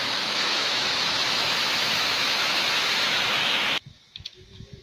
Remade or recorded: remade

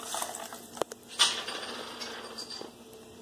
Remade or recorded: recorded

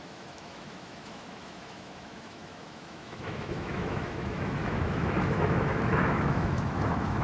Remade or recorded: remade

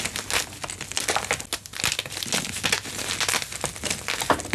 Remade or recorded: recorded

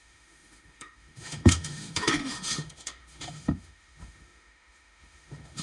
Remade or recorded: remade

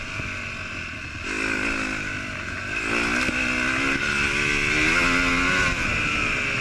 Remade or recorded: recorded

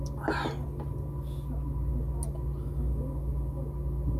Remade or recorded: recorded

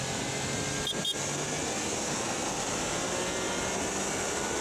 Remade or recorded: recorded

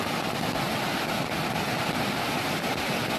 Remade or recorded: recorded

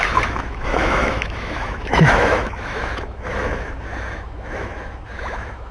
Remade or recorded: remade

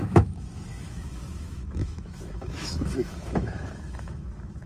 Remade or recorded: remade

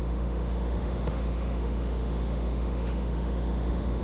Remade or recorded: remade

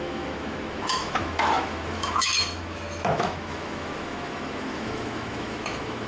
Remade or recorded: remade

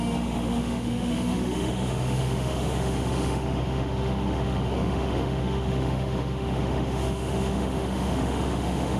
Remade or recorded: remade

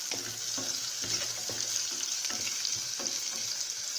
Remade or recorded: recorded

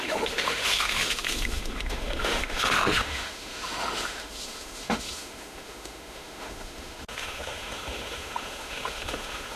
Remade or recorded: remade